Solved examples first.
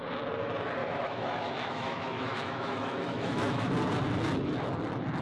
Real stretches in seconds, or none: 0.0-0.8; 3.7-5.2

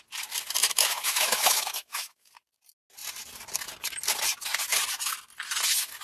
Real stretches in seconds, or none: 0.0-0.6; 2.3-6.0

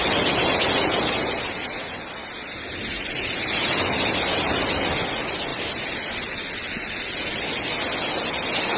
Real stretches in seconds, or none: 0.0-8.8

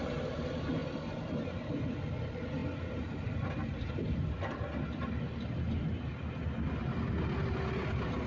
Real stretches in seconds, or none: 0.0-0.8; 1.4-8.3

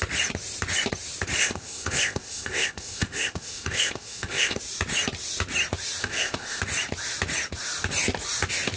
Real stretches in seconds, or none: 0.0-1.4; 4.6-6.0; 6.6-8.8